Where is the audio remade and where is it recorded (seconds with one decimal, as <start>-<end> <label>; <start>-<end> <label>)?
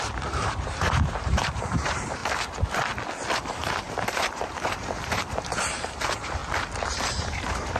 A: 0.0-2.2 remade; 2.2-3.5 recorded; 3.5-6.4 remade; 6.4-6.9 recorded; 6.9-7.8 remade